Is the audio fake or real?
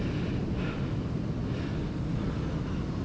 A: real